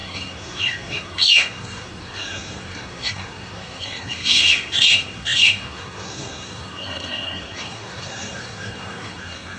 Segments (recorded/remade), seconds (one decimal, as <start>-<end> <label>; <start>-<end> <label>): 0.0-9.6 remade